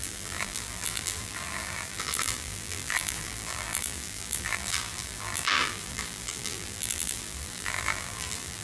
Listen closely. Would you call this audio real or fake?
fake